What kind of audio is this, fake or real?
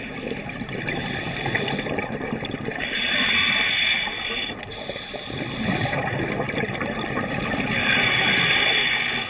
real